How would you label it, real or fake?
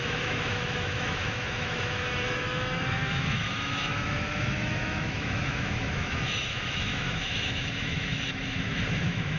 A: fake